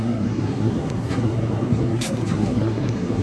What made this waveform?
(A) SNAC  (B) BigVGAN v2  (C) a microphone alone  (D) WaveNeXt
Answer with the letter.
A